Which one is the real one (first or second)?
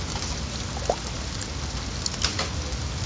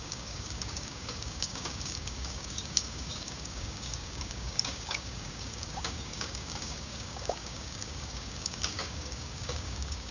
first